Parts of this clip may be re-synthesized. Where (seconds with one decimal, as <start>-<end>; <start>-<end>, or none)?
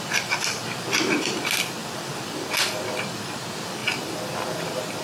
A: 3.8-5.0